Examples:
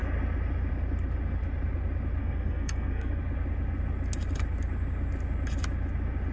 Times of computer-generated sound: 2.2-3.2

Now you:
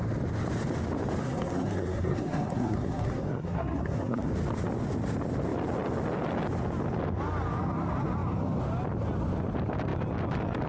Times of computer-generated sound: 1.2-4.3

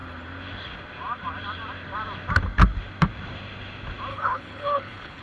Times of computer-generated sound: 4.1-5.2